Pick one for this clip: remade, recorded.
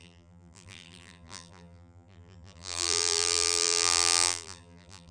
remade